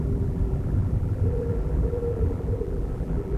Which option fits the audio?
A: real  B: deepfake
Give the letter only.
B